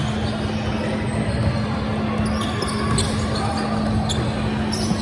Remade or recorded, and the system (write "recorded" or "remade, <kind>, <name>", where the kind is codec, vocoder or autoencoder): recorded